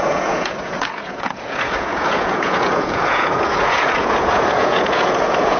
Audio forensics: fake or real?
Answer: fake